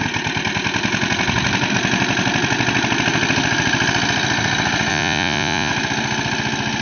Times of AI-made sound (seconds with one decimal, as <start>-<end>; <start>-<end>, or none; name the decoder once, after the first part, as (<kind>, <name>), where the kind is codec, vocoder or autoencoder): 4.9-5.7 (vocoder, Vocos)